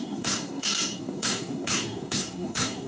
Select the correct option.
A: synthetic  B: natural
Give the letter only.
A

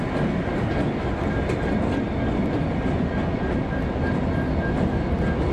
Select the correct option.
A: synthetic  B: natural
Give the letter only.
B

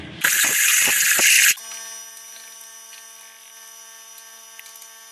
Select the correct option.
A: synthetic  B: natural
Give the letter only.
B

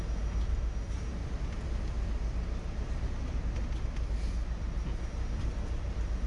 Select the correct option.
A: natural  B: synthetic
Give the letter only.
A